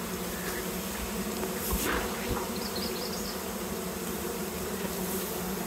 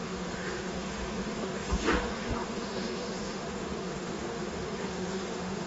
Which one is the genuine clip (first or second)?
first